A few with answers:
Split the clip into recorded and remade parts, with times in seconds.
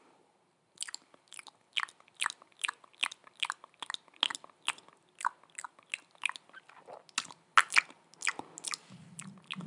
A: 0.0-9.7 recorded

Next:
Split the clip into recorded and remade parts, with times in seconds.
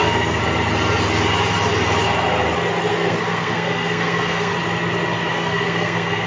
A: 0.0-0.4 remade; 0.4-2.9 recorded; 2.9-4.5 remade; 4.5-5.3 recorded; 5.3-6.3 remade